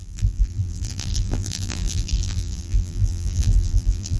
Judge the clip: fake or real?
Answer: fake